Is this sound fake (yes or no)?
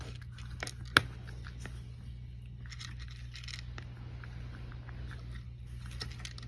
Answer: no